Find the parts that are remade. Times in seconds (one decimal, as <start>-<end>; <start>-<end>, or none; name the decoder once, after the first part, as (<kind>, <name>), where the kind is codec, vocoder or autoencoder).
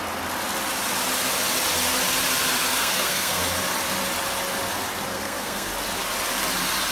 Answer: 2.7-3.4 (codec, SNAC); 5.1-5.7